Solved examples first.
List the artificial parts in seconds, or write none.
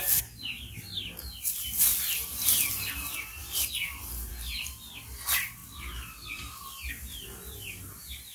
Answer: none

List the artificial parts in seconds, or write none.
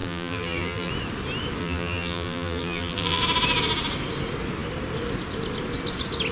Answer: 0.0-0.9 (vocoder, BigVGAN v2); 1.6-3.2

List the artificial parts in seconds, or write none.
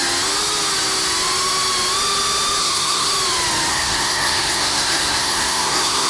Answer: 2.6-3.1 (codec, SNAC); 3.7-6.1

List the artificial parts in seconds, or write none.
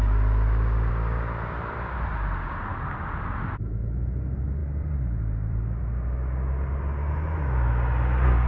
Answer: 0.0-0.9 (vocoder, BigVGAN v2); 4.6-5.8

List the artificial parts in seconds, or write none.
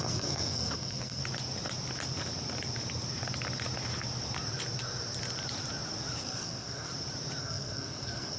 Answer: 0.0-1.2 (codec, SNAC); 6.2-6.9; 7.4-8.4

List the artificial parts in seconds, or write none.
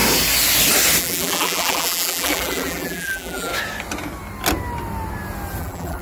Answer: 1.0-3.5 (vocoder, BigVGAN v2); 5.6-6.0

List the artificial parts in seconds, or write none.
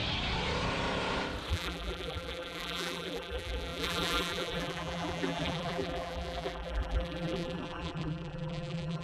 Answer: 1.5-9.0 (vocoder, BigVGAN v2)